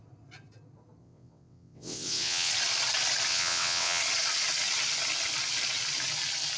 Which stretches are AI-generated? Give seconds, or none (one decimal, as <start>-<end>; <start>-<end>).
1.0-2.5; 3.3-4.0